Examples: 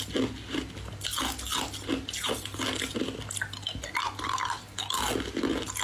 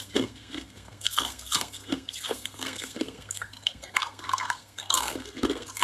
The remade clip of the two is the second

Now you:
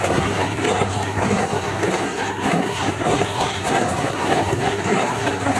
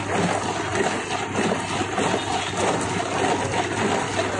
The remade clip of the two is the first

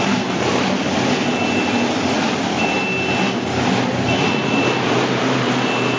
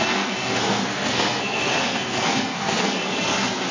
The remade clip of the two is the second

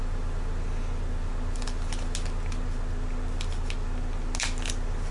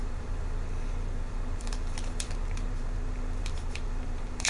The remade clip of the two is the second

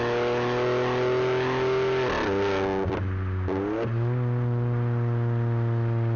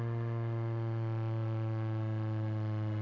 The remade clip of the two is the second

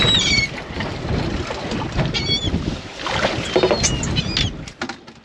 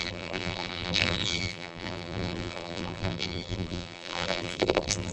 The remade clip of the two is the second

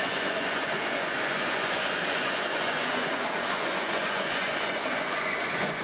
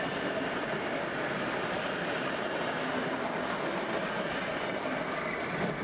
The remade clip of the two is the first